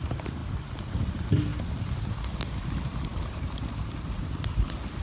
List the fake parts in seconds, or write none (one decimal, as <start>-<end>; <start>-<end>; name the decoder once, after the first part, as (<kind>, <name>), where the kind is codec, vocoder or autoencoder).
0.0-1.5 (vocoder, BigVGAN v2); 2.2-5.0